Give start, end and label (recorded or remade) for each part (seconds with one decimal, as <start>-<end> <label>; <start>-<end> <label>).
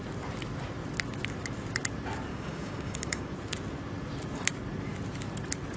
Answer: 0.0-2.3 recorded; 2.3-3.3 remade; 3.3-5.8 recorded